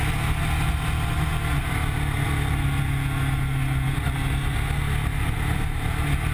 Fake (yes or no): no